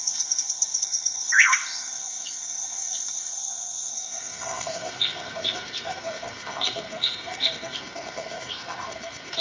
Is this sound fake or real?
fake